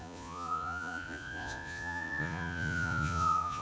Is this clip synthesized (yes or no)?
yes